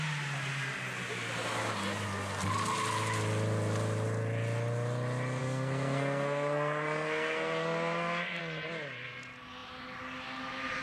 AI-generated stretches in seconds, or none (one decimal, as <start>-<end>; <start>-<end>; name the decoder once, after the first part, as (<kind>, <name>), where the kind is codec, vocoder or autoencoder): 5.4-8.4 (codec, SNAC)